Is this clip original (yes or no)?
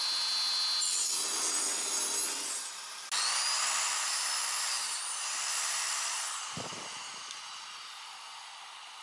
yes